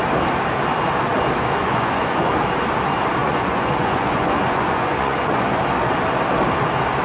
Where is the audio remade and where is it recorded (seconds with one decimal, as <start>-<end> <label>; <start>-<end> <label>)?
0.0-1.6 recorded; 1.6-2.3 remade; 2.3-3.2 recorded; 3.2-5.6 remade; 5.6-7.0 recorded